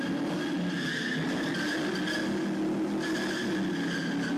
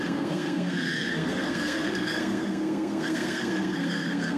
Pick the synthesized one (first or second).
second